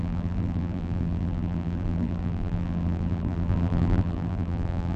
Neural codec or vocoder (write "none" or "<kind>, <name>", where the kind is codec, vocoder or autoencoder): vocoder, BigVGAN v2